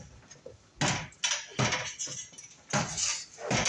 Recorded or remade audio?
recorded